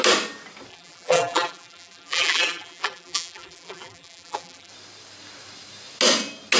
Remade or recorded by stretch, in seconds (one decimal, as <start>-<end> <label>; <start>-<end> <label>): 0.0-0.7 recorded; 0.7-4.7 remade; 4.7-6.6 recorded

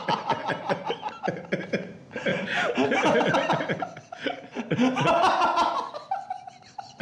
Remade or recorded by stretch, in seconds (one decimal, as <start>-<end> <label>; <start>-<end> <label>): 0.0-1.7 recorded; 1.7-2.3 remade; 2.3-6.5 recorded; 6.5-7.0 remade

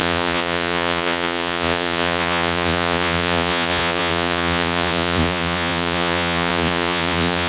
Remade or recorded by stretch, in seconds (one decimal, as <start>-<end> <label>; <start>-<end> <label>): 0.0-7.5 remade

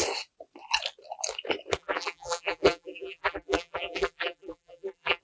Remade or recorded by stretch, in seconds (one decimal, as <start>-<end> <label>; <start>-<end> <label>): 0.0-1.8 recorded; 1.8-5.2 remade

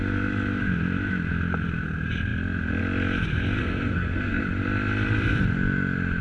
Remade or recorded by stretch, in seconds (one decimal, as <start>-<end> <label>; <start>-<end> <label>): 0.0-3.6 recorded; 3.6-4.4 remade; 4.4-6.2 recorded

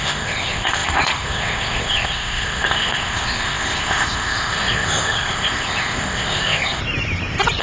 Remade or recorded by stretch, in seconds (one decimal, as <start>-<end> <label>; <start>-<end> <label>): 0.0-6.8 remade; 6.8-7.6 recorded